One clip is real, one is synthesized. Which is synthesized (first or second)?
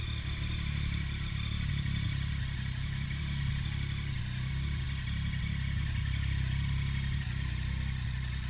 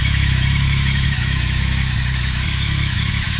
second